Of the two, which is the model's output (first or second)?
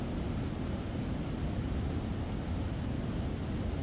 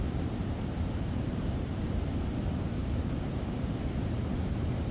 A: second